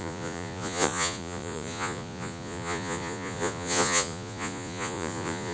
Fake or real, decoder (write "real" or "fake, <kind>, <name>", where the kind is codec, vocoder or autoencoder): fake, vocoder, Vocos